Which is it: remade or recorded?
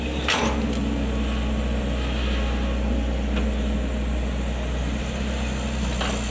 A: recorded